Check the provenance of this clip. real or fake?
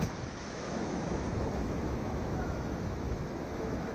fake